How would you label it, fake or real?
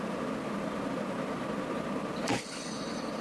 real